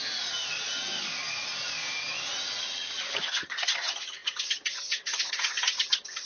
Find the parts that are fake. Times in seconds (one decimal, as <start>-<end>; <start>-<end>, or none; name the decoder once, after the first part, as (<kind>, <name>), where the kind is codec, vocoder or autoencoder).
2.6-6.3 (vocoder, HiFi-GAN)